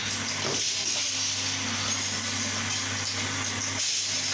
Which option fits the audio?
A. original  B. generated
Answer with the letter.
A